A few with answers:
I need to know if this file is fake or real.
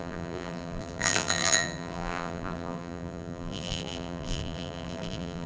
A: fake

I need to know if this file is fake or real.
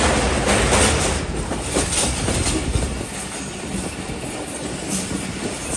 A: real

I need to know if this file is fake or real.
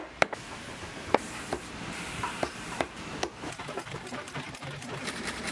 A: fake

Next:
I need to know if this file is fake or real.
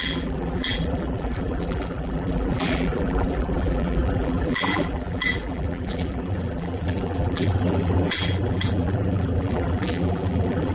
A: fake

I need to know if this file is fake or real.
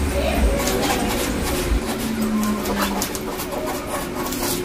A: real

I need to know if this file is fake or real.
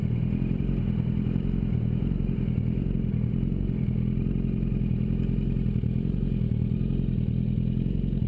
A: fake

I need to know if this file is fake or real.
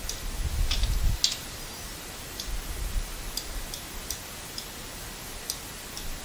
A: real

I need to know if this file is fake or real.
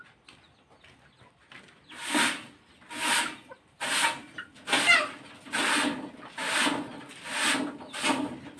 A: real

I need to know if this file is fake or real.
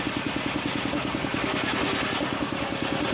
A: real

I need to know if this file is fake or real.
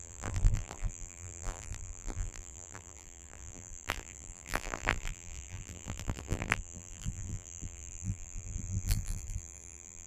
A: fake